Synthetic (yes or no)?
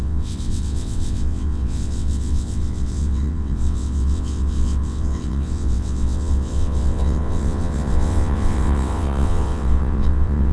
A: yes